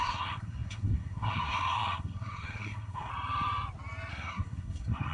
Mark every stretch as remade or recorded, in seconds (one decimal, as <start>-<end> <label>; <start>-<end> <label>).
0.0-3.1 remade; 3.1-4.1 recorded; 4.1-5.1 remade